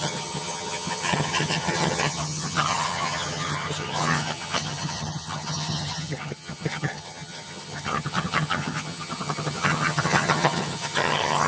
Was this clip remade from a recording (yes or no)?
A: yes